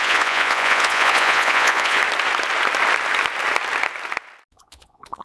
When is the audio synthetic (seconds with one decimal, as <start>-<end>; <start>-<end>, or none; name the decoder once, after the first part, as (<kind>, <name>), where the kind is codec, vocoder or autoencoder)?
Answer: 0.0-2.0 (vocoder, Vocos); 4.5-5.2